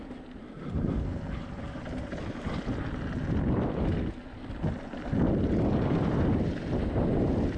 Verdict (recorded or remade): recorded